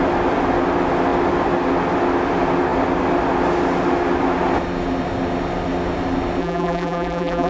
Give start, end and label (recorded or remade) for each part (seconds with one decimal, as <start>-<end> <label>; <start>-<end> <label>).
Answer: 0.0-6.4 recorded; 6.4-7.5 remade